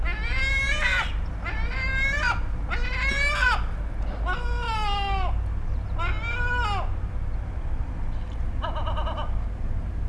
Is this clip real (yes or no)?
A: yes